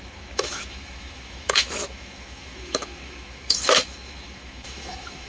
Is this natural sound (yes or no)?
no